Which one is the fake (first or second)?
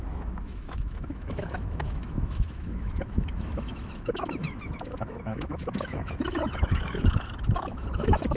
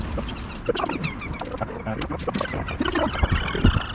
first